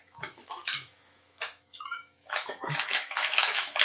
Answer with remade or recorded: remade